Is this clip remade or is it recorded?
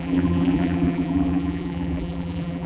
remade